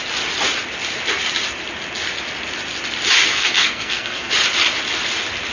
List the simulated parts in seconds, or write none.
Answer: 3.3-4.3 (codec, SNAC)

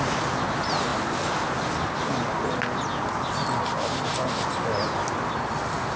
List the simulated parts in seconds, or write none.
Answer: none

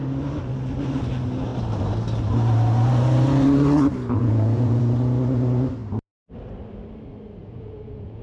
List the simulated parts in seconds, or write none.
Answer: 4.2-4.8 (vocoder, Vocos); 7.4-8.2

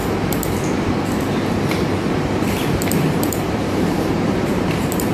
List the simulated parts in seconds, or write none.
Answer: 2.8-5.1 (vocoder, BigVGAN v2)